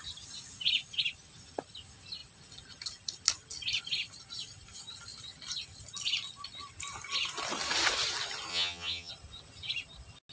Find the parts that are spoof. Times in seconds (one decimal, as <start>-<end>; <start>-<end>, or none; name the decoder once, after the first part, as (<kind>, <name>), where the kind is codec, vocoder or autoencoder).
8.5-9.1 (vocoder, HiFi-GAN)